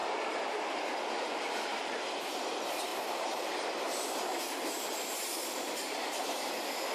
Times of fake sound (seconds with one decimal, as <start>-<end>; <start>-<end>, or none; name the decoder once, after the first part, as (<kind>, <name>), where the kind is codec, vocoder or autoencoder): 2.9-3.5 (vocoder, BigVGAN v2); 4.3-6.1